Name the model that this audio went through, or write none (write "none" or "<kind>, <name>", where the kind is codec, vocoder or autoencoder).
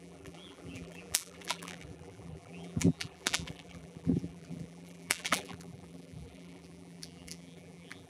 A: vocoder, BigVGAN v2